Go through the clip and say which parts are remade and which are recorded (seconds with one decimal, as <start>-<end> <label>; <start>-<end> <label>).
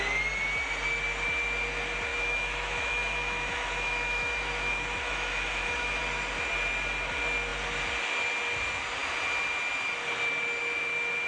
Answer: 0.0-2.1 recorded; 2.1-6.0 remade; 6.0-11.3 recorded